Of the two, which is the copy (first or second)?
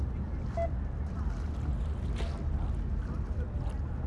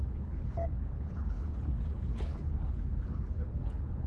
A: second